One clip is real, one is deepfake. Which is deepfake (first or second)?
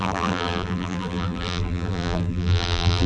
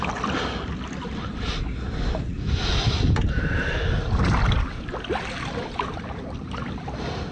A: first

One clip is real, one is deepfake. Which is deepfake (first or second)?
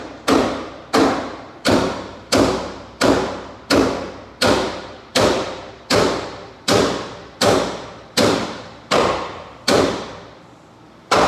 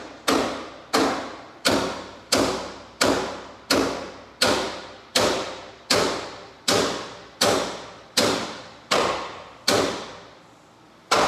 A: first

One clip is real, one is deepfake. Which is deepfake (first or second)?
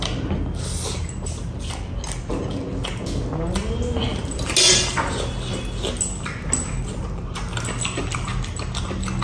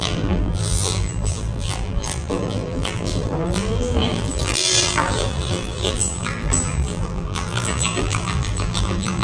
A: second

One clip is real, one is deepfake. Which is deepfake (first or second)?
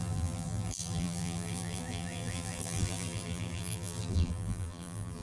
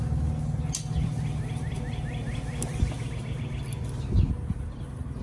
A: first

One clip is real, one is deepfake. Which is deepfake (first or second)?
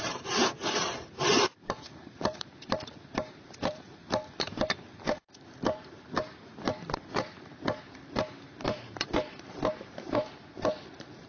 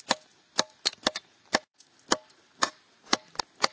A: first